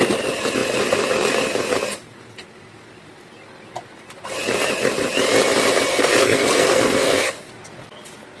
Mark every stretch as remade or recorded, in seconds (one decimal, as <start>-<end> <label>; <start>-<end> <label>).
0.0-5.9 recorded; 5.9-7.3 remade; 7.3-8.4 recorded